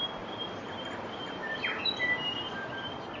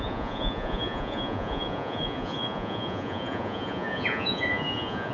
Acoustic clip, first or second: first